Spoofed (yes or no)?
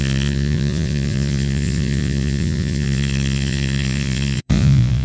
yes